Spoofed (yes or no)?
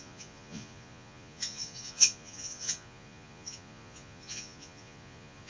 yes